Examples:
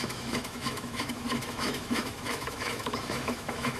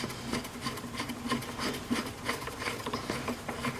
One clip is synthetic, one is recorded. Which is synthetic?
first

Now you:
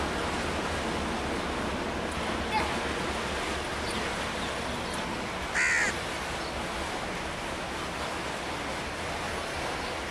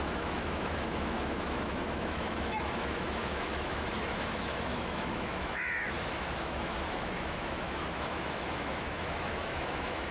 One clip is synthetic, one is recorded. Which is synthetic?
second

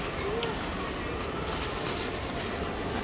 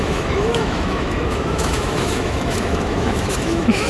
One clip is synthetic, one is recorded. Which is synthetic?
second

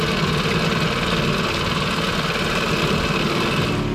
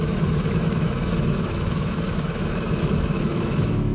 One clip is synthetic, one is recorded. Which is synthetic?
second